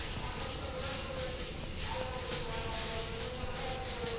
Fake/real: real